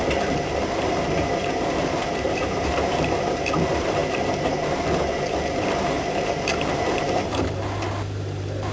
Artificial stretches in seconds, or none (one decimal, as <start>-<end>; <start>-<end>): 0.0-8.7